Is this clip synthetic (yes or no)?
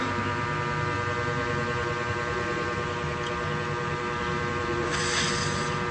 no